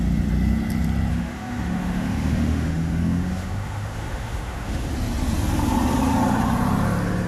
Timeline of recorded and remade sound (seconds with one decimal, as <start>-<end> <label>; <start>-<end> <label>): 0.0-1.1 recorded; 1.1-4.9 remade; 4.9-7.3 recorded